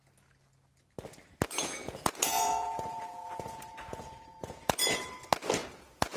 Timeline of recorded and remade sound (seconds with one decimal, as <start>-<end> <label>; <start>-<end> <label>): 0.0-1.6 recorded; 1.6-5.1 remade; 5.1-5.6 recorded; 5.6-6.2 remade